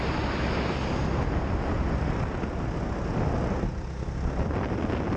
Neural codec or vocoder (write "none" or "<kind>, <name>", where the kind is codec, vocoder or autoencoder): none